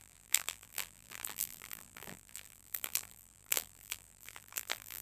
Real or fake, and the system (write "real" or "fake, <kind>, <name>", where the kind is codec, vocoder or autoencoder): fake, vocoder, BigVGAN v2